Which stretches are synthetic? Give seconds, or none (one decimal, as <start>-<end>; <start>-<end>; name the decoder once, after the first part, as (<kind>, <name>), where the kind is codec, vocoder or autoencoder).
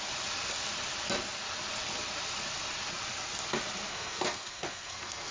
3.9-5.3 (codec, SNAC)